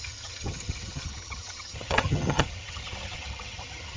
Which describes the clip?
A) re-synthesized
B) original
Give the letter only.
A